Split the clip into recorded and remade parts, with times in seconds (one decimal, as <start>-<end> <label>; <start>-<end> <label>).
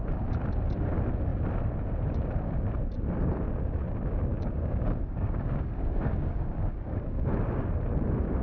0.0-4.3 recorded; 4.3-7.3 remade; 7.3-8.4 recorded